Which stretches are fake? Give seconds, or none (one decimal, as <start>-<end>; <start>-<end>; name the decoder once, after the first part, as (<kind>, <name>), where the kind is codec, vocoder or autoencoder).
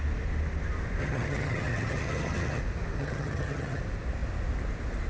1.0-2.6 (vocoder, HiFi-GAN); 3.0-3.8